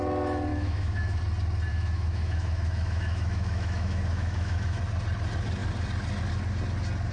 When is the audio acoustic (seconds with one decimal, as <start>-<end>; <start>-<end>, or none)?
0.0-0.5; 1.2-1.7; 4.8-7.1